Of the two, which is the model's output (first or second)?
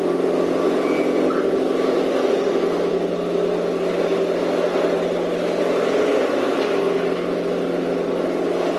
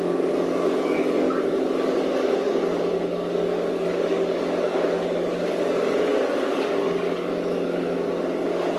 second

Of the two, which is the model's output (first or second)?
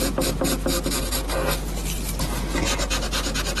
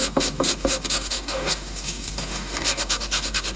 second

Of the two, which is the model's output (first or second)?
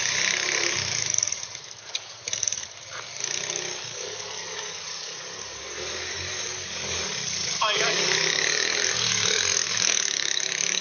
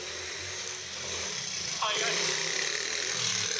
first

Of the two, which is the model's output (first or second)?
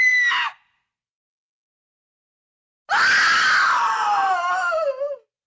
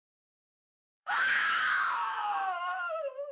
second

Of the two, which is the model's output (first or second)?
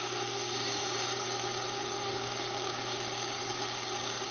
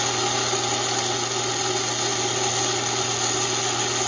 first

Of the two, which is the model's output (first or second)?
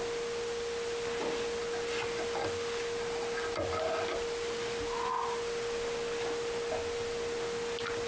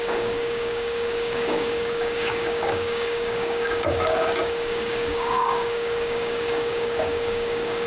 second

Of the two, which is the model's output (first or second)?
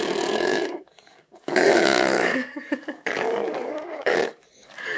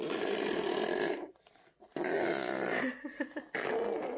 first